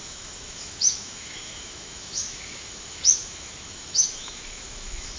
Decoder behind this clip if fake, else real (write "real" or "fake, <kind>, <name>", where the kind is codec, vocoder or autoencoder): fake, autoencoder, DAC-VAE